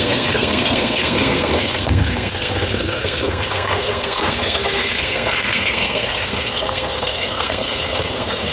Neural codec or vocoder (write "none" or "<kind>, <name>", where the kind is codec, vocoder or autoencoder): codec, SNAC